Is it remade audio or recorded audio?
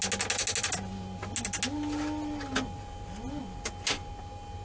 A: recorded